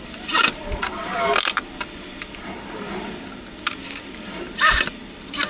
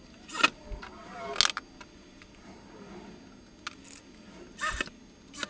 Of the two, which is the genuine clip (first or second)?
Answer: second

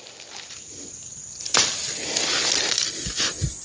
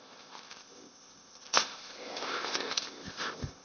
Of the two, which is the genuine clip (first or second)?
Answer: first